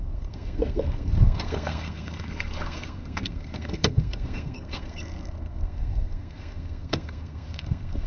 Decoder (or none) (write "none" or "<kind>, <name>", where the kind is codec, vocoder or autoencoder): codec, SNAC